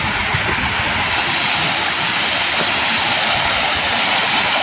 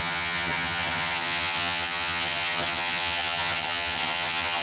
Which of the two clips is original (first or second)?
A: first